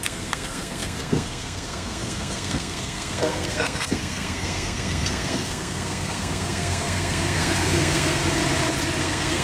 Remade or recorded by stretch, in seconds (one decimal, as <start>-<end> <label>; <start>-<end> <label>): 0.0-8.2 remade; 8.2-9.0 recorded; 9.0-9.4 remade